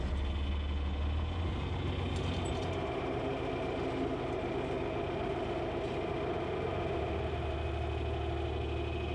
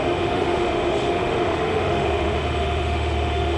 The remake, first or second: second